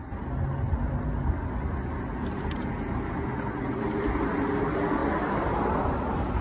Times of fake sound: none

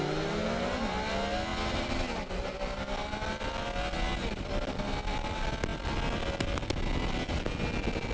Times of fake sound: none